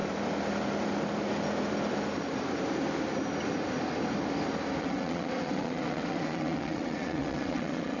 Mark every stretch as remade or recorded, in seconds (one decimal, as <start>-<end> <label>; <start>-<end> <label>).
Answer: 0.0-4.8 recorded; 4.8-8.0 remade